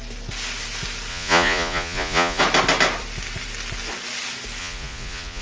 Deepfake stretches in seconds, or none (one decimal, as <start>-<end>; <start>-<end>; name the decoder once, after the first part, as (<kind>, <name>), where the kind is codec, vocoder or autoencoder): 1.1-2.4 (vocoder, Vocos); 4.6-5.4